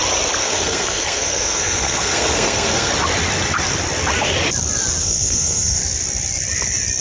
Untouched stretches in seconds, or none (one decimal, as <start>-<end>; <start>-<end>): 0.0-0.4; 2.9-5.0; 5.8-7.0